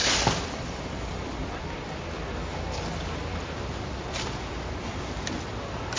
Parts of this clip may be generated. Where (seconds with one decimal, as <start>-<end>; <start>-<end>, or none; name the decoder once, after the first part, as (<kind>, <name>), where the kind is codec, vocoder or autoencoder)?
0.0-1.0 (vocoder, BigVGAN v2); 3.3-5.4